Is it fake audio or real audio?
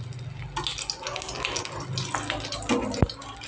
real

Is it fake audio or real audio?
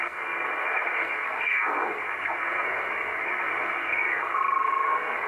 fake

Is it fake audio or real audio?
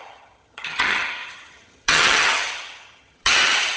fake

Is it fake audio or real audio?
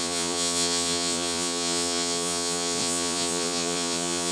fake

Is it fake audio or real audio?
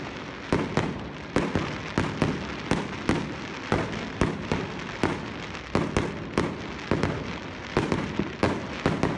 real